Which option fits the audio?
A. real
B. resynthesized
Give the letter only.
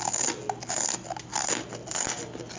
A